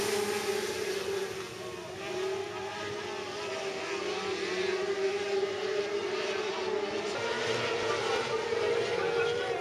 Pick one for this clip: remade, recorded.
recorded